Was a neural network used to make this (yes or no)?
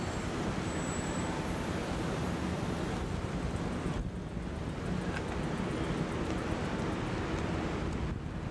no